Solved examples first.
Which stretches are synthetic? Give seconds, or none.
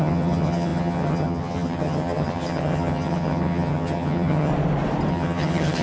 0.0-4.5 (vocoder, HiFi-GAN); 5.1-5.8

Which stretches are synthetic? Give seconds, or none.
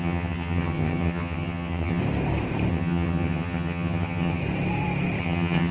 0.0-2.0 (vocoder, HiFi-GAN); 2.7-4.4; 5.2-5.7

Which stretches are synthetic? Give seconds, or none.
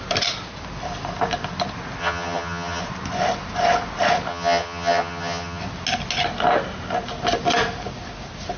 2.0-2.8 (vocoder, HiFi-GAN); 4.3-5.6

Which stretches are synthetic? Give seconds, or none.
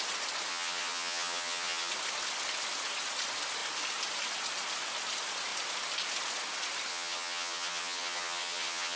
0.5-1.9 (vocoder, HiFi-GAN); 6.9-9.0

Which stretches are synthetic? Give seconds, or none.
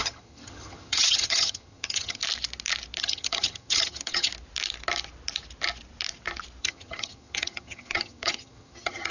0.0-2.2 (vocoder, HiFi-GAN); 3.0-4.3; 6.6-9.1